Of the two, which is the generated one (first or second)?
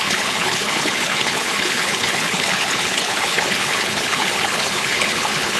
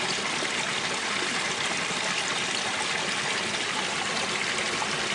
first